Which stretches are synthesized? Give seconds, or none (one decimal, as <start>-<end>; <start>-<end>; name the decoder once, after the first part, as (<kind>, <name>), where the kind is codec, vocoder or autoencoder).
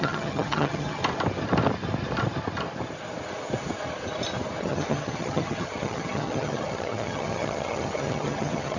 0.0-1.0 (vocoder, HiFi-GAN); 4.6-8.8